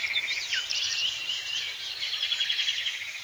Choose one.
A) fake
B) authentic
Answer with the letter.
A